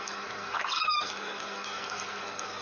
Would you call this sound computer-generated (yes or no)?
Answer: yes